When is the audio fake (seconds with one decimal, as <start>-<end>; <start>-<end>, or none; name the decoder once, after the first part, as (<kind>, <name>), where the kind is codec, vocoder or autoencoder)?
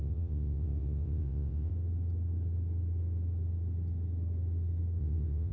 0.0-1.7 (vocoder, WaveNeXt); 5.0-5.5